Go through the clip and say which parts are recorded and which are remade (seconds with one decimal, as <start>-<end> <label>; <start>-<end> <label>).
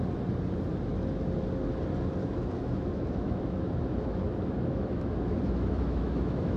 0.0-2.2 recorded; 2.2-6.6 remade